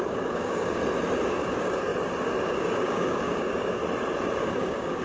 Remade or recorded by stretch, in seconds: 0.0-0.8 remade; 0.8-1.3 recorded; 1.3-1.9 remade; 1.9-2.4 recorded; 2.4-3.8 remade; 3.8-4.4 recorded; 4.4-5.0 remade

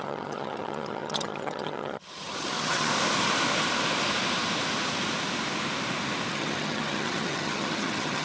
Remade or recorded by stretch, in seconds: 0.0-2.9 remade; 2.9-6.3 recorded; 6.3-8.2 remade

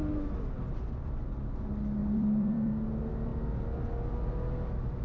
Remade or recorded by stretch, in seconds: 0.0-2.0 recorded; 2.0-2.7 remade; 2.7-5.0 recorded

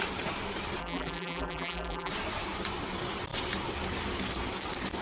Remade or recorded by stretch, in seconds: 0.0-0.8 recorded; 0.8-2.1 remade; 2.1-5.0 recorded

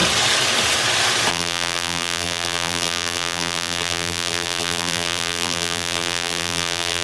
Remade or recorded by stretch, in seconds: 0.0-1.3 recorded; 1.3-7.0 remade